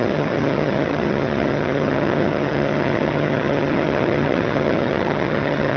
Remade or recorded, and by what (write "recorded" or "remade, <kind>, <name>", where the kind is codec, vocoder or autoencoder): remade, vocoder, HiFi-GAN